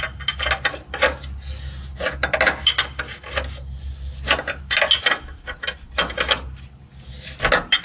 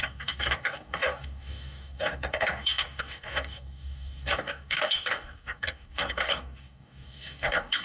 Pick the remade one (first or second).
second